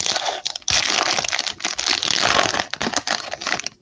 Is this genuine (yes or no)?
yes